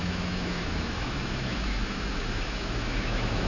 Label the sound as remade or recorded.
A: remade